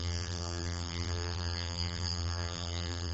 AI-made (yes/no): yes